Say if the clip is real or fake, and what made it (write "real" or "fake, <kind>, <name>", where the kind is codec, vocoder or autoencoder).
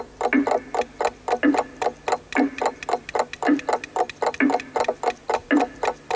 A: real